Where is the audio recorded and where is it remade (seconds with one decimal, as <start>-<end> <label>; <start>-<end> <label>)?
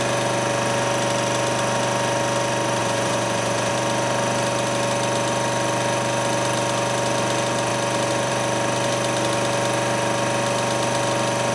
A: 0.0-2.8 recorded; 2.8-3.7 remade; 3.7-11.5 recorded